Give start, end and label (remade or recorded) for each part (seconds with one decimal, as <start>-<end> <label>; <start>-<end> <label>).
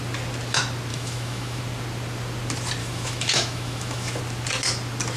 0.0-0.9 recorded; 0.9-1.6 remade; 1.6-2.8 recorded; 2.8-4.2 remade; 4.2-5.2 recorded